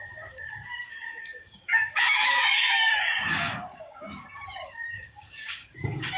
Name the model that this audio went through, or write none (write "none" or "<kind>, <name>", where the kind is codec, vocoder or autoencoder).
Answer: codec, DAC